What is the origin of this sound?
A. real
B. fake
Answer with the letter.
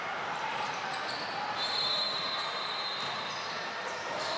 A